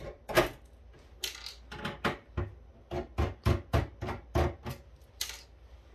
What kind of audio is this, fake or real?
real